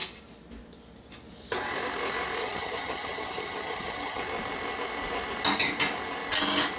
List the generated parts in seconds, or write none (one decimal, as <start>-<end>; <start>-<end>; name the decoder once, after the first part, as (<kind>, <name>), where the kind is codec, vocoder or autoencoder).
2.4-4.2 (vocoder, HiFi-GAN)